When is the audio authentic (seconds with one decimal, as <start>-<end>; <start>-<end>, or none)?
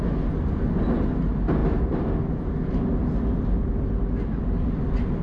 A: 0.0-5.2